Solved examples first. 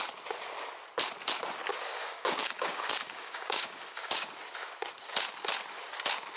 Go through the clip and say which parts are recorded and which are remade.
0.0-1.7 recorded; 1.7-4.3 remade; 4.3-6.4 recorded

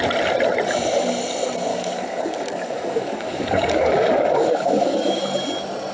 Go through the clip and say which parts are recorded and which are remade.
0.0-1.7 recorded; 1.7-5.2 remade; 5.2-5.9 recorded

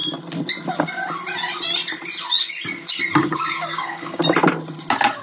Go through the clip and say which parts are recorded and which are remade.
0.0-3.2 recorded; 3.2-4.2 remade; 4.2-5.2 recorded